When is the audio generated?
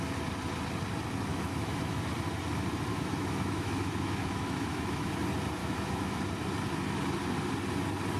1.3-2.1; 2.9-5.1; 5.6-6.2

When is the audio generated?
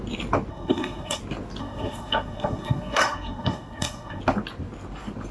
0.5-1.2; 1.6-4.2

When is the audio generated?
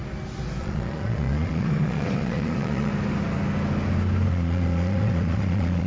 0.6-2.9; 4.3-5.9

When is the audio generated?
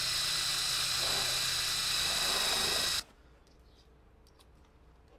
none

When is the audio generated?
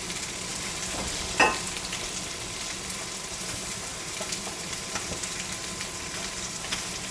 none